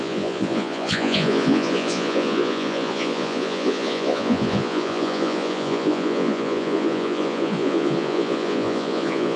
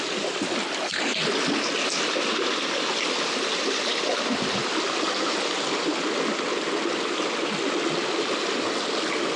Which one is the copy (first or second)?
first